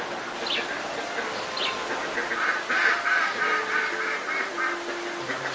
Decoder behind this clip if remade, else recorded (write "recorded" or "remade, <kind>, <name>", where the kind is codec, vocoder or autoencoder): recorded